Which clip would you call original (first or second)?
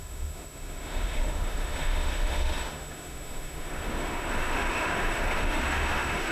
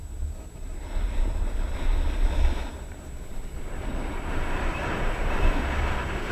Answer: second